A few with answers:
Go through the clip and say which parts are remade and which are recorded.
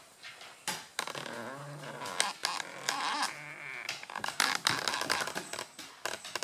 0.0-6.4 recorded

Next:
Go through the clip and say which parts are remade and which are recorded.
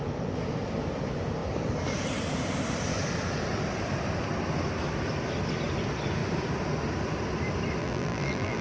0.0-7.8 recorded; 7.8-8.6 remade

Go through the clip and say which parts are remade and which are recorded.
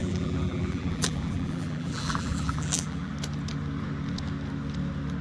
0.0-3.1 remade; 3.1-5.2 recorded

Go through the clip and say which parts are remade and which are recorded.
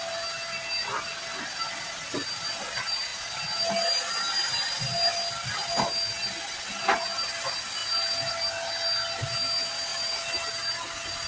0.0-9.9 recorded; 9.9-10.5 remade; 10.5-11.3 recorded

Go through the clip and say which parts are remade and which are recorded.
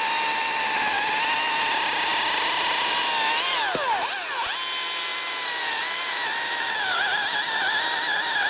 0.0-2.1 recorded; 2.1-2.9 remade; 2.9-8.5 recorded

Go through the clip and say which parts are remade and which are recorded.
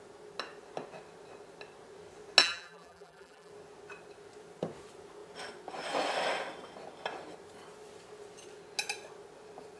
0.0-2.4 recorded; 2.4-3.5 remade; 3.5-9.8 recorded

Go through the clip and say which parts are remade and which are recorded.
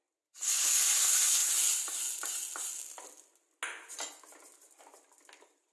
0.0-5.7 recorded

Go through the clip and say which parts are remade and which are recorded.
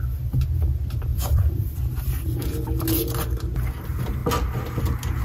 0.0-1.1 recorded; 1.1-2.1 remade; 2.1-5.2 recorded